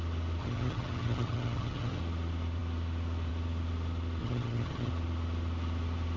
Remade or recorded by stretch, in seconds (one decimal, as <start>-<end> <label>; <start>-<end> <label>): 0.0-0.4 recorded; 0.4-2.0 remade; 2.0-4.2 recorded; 4.2-4.9 remade; 4.9-6.2 recorded